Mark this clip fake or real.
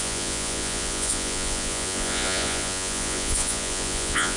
fake